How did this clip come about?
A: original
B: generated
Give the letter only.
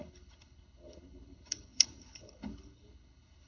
B